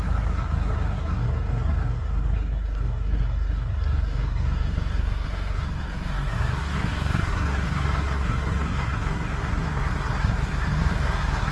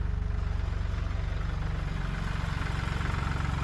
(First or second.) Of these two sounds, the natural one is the second